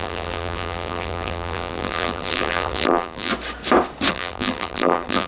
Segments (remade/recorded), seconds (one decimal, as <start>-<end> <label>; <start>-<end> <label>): 0.0-3.3 remade; 3.3-4.1 recorded; 4.1-5.3 remade